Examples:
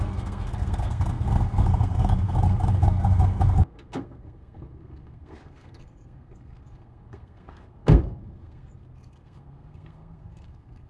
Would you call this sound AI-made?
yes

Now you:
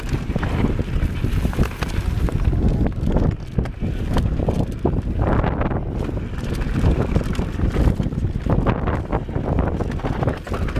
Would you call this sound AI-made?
no